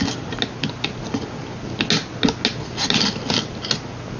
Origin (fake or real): real